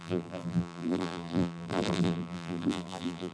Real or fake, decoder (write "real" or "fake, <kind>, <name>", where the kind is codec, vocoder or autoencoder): fake, vocoder, BigVGAN v2